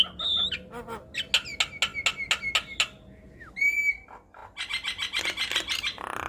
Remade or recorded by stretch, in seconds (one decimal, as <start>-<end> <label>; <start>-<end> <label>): 0.0-6.3 recorded